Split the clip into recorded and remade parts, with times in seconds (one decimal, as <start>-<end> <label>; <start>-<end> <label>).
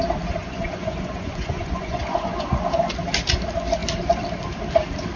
0.0-0.4 recorded; 0.4-2.5 remade; 2.5-5.2 recorded